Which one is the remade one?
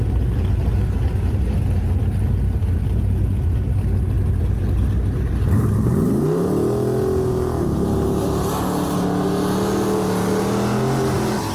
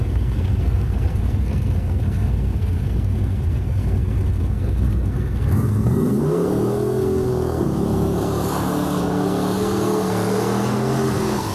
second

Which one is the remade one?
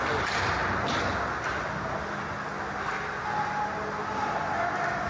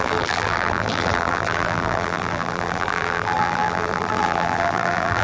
second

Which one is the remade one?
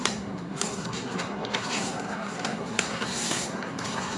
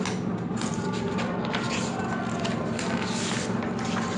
first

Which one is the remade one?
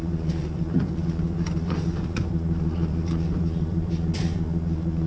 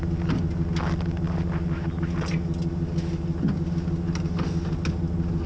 first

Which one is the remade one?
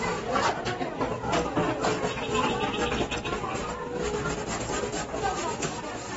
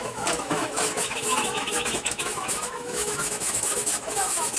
second